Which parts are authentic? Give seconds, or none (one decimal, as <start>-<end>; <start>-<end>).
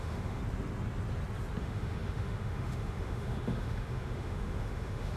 0.4-1.6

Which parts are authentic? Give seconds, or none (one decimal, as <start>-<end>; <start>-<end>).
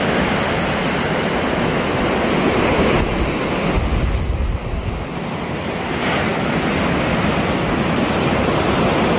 0.0-9.2